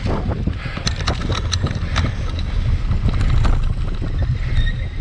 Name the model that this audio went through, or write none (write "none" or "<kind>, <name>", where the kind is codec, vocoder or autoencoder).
none